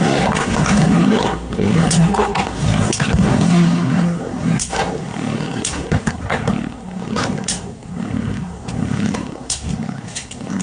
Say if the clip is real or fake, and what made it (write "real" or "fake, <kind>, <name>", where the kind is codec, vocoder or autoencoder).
fake, codec, SNAC